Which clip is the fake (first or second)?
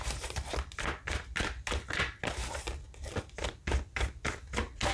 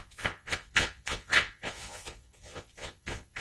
second